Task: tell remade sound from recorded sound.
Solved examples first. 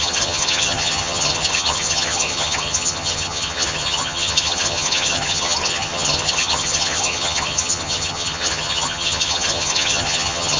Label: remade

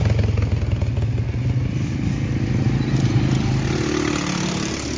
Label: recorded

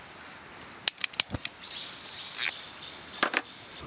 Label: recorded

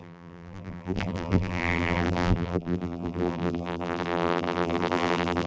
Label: remade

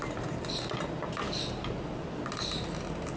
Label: recorded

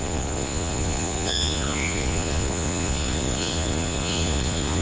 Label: remade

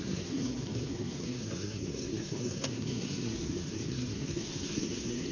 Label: remade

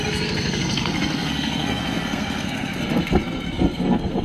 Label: remade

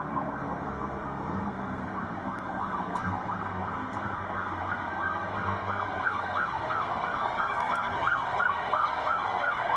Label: remade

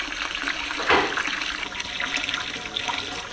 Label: recorded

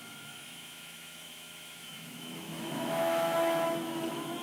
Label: remade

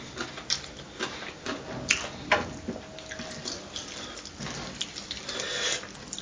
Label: recorded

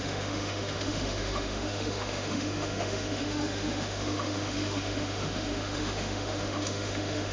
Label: remade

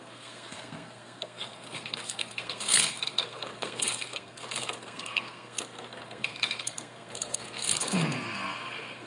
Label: remade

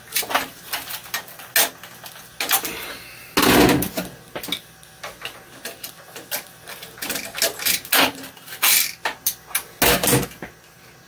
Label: recorded